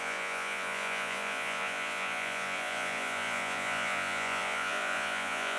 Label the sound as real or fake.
fake